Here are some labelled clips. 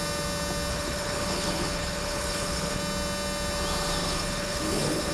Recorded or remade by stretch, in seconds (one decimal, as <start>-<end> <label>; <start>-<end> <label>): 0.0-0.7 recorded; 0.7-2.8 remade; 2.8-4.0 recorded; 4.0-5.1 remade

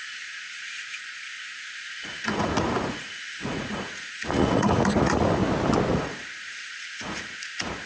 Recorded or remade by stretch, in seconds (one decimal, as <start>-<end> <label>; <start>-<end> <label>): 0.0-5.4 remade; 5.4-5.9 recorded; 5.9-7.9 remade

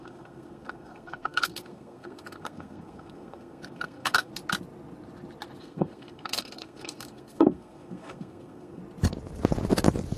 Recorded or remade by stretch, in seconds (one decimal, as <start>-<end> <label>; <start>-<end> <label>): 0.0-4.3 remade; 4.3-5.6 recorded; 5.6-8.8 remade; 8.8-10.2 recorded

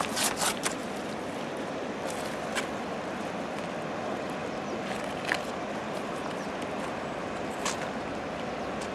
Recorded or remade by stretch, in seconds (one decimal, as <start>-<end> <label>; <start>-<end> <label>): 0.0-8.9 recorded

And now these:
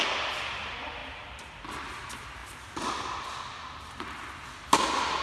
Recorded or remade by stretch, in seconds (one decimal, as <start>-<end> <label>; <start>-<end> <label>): 0.0-5.2 recorded

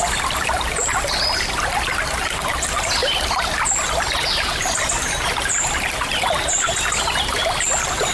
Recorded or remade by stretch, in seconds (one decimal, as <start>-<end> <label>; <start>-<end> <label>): 0.0-7.4 recorded; 7.4-8.1 remade

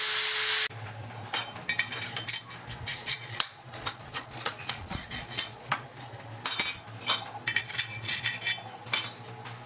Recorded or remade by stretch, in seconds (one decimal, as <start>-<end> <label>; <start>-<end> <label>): 0.0-2.9 recorded; 2.9-6.3 remade; 6.3-7.6 recorded; 7.6-8.2 remade; 8.2-9.7 recorded

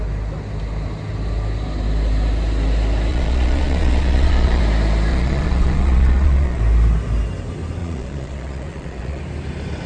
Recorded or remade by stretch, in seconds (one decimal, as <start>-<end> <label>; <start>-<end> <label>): 0.0-3.1 recorded; 3.1-4.6 remade; 4.6-5.1 recorded; 5.1-6.6 remade; 6.6-7.8 recorded; 7.8-9.2 remade; 9.2-9.9 recorded